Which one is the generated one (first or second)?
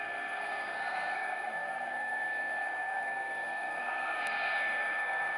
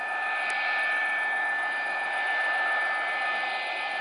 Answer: first